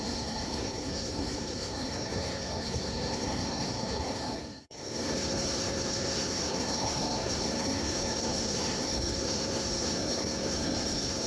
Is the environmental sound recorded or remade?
remade